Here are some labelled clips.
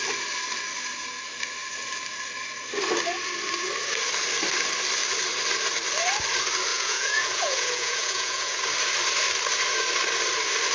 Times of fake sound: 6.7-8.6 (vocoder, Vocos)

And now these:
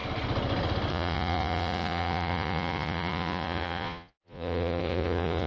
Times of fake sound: 0.9-5.5 (vocoder, Vocos)

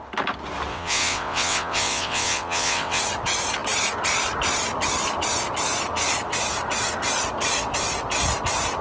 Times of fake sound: 0.7-3.0 (vocoder, WaveNeXt)

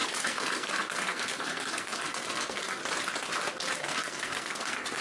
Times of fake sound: 0.0-2.8 (codec, SNAC); 3.8-5.0

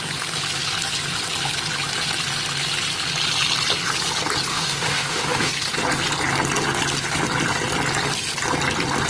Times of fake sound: 4.5-5.5 (autoencoder, DAC-VAE)